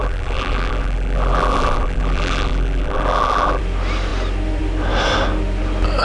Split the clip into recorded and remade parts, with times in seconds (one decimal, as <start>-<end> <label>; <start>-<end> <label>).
0.0-3.6 remade; 3.6-6.0 recorded